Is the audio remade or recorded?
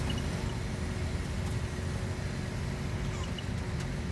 recorded